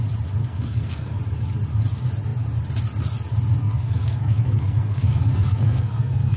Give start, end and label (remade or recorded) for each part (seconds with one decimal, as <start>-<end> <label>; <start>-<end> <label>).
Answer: 0.0-0.4 recorded; 0.4-1.2 remade; 1.2-3.6 recorded; 3.6-6.4 remade